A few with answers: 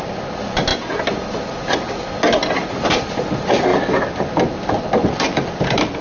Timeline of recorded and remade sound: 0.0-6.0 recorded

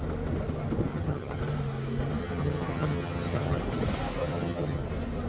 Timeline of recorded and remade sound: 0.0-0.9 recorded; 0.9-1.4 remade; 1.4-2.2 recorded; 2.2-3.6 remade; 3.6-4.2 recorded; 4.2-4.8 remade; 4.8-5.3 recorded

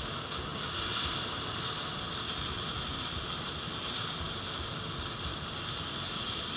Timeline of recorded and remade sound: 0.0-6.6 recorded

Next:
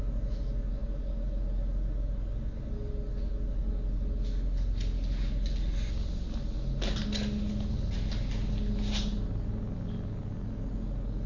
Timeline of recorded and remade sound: 0.0-11.3 recorded

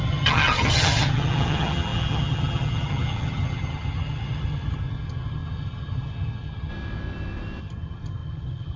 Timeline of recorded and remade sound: 0.0-6.7 remade; 6.7-7.6 recorded; 7.6-8.8 remade

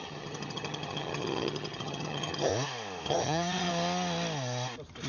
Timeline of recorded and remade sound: 0.0-2.5 remade; 2.5-3.1 recorded; 3.1-3.7 remade; 3.7-5.1 recorded